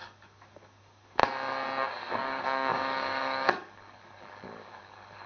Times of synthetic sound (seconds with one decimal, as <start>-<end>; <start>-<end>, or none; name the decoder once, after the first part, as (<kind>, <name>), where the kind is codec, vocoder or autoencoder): 0.0-1.2 (codec, DAC); 2.1-5.3